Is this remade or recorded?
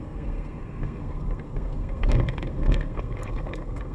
remade